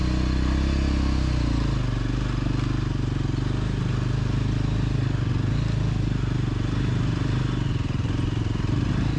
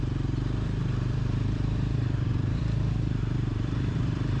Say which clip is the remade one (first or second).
second